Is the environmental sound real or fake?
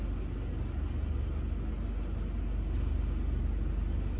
real